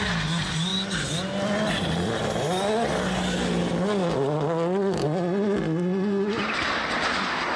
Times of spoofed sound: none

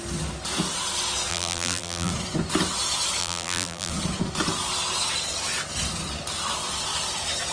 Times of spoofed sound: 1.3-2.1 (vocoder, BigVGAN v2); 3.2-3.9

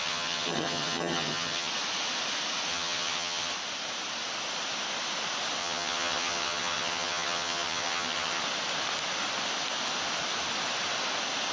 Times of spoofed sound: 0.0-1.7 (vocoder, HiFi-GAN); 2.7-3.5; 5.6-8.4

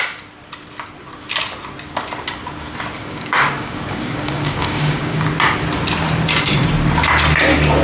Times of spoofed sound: 3.0-5.3 (codec, DAC)

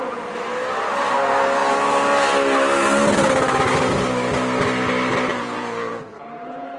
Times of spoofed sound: 5.3-6.8 (vocoder, Vocos)

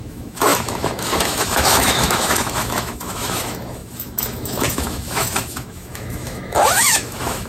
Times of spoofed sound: 0.0-7.5 (autoencoder, DAC-VAE)

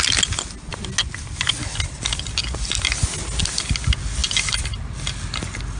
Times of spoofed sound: none

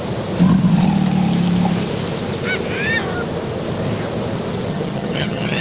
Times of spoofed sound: 4.7-5.6 (vocoder, HiFi-GAN)